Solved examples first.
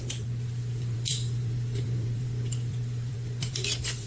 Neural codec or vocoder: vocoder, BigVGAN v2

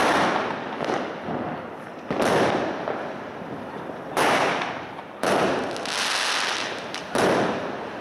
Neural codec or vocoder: none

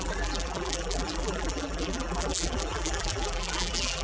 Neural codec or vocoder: vocoder, BigVGAN v2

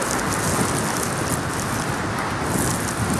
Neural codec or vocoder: none